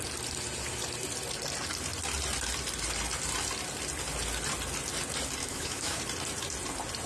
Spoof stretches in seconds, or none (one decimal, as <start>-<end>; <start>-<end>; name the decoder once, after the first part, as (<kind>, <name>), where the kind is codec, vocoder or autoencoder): 5.4-6.0 (autoencoder, DAC-VAE)